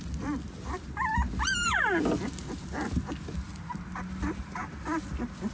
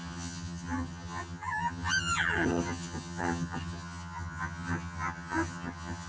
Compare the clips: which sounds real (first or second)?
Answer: first